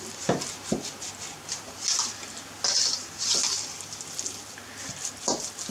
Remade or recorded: recorded